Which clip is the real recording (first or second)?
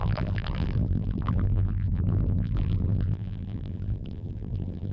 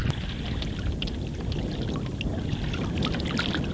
second